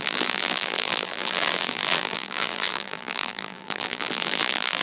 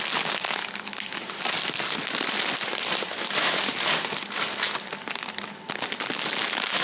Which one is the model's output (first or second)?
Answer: first